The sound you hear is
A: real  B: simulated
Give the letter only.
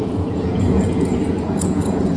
B